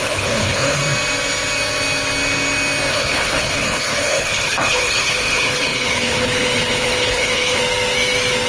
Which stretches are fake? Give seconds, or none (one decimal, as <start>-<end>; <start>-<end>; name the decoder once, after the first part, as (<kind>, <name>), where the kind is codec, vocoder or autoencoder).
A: 0.0-0.8 (codec, HILCodec); 2.9-7.6